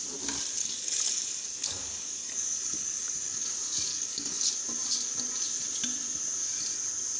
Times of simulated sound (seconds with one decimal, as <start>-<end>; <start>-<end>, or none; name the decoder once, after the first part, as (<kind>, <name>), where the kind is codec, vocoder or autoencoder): 0.6-3.5 (codec, DAC); 3.9-4.5